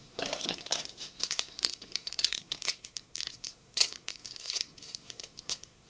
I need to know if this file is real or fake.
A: fake